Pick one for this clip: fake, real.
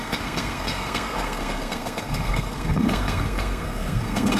fake